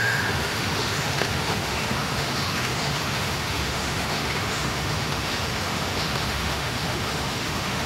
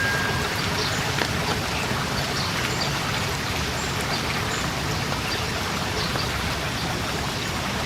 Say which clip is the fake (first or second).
first